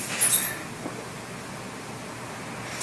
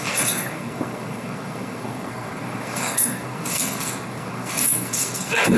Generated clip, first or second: second